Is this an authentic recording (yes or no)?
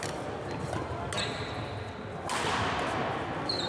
yes